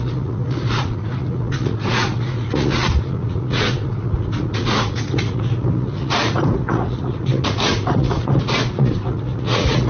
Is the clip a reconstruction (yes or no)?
yes